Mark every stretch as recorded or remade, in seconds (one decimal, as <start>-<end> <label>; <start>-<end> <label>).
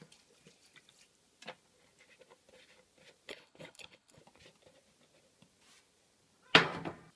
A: 0.0-3.3 recorded; 3.3-4.2 remade; 4.2-7.2 recorded